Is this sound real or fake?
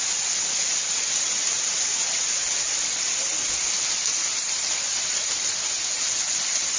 real